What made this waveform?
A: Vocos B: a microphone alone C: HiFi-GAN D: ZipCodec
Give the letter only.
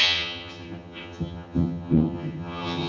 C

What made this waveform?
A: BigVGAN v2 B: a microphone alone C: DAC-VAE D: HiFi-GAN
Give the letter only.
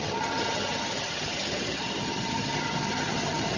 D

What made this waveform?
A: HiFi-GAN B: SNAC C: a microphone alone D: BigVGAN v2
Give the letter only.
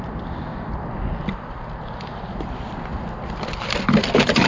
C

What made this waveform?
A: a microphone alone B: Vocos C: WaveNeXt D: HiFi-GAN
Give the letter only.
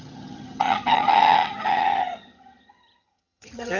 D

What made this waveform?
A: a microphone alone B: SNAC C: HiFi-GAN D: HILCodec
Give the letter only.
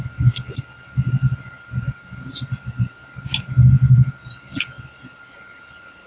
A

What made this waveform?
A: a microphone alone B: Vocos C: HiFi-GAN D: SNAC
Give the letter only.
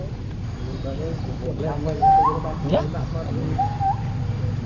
A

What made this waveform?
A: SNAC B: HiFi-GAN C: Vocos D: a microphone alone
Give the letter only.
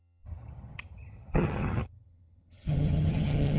B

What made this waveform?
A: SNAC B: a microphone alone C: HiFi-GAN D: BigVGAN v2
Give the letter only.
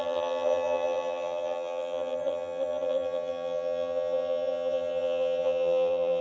C